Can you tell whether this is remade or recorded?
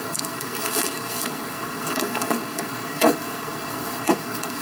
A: remade